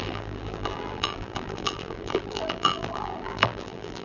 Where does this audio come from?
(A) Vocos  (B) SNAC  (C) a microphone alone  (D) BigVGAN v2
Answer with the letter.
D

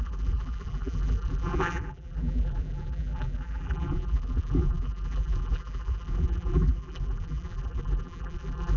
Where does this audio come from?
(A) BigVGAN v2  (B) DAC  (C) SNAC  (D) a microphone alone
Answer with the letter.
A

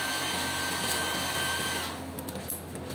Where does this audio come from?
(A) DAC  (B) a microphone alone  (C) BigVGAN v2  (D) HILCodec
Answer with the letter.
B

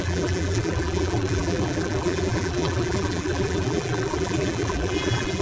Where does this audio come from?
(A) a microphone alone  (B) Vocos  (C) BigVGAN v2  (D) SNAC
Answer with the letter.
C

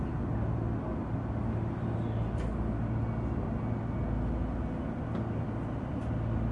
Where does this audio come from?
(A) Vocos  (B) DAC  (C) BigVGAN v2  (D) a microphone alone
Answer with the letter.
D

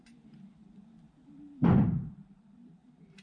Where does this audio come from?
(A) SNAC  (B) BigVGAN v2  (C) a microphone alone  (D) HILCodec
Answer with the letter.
B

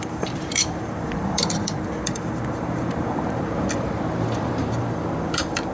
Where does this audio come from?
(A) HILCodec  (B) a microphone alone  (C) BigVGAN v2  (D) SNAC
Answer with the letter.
C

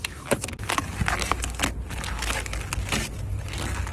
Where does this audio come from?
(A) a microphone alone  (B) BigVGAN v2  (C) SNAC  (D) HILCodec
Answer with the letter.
A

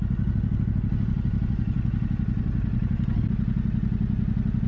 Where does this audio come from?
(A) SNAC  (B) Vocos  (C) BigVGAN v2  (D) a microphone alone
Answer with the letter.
D